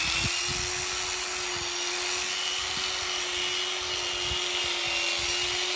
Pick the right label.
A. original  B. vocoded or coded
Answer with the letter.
A